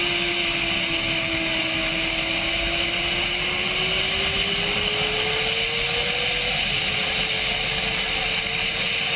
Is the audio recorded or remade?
recorded